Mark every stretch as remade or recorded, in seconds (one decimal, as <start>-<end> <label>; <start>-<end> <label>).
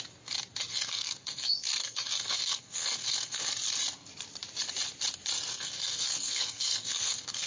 0.0-0.7 recorded; 0.7-3.5 remade; 3.5-5.5 recorded; 5.5-7.5 remade